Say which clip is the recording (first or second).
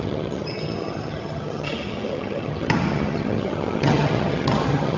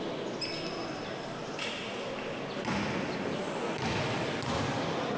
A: second